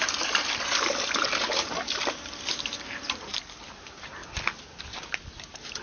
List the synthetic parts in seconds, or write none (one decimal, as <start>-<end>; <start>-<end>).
none